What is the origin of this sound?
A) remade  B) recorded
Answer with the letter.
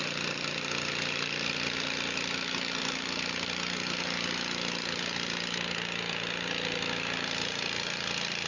B